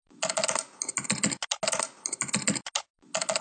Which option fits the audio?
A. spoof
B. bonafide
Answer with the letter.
B